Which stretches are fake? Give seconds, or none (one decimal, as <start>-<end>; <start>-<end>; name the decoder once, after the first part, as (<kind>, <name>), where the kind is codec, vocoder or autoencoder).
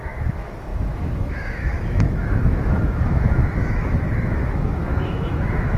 0.0-5.8 (autoencoder, DAC-VAE)